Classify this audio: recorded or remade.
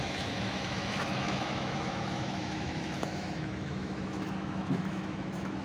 remade